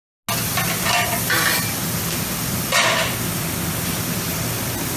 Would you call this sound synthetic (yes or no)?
no